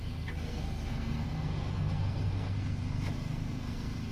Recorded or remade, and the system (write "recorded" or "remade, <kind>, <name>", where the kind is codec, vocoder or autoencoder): remade, codec, SNAC